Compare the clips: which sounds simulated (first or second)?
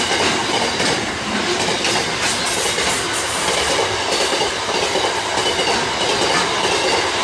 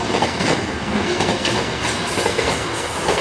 second